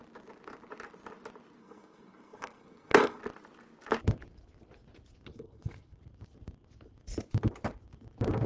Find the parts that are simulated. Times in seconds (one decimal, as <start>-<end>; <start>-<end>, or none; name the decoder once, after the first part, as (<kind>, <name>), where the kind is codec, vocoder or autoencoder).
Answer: 1.6-3.2 (codec, SNAC); 5.3-6.0